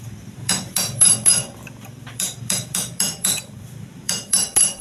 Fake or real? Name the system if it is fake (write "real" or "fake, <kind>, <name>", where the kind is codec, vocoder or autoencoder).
fake, vocoder, BigVGAN v2